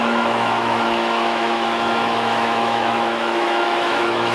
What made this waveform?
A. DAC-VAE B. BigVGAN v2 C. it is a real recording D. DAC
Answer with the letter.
A